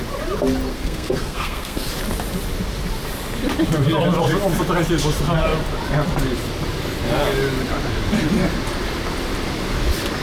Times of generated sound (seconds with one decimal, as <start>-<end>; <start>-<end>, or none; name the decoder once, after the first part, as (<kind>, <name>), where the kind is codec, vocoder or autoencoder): 0.7-1.9 (codec, SNAC)